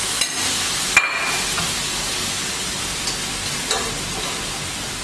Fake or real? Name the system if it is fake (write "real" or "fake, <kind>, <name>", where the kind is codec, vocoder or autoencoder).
real